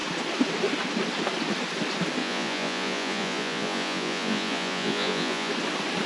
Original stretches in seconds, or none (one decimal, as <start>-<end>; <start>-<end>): 0.0-2.2; 5.5-6.1